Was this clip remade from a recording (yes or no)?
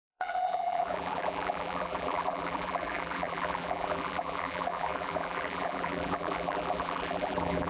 yes